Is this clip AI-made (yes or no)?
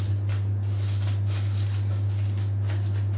no